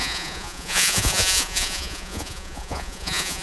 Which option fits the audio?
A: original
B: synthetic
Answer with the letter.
B